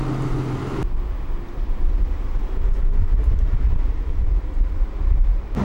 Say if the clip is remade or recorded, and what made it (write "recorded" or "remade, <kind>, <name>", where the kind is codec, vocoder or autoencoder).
recorded